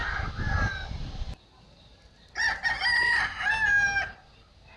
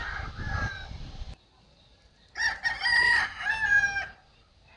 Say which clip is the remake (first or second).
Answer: second